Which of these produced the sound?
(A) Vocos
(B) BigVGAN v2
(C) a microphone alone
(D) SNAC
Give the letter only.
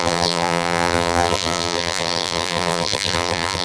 B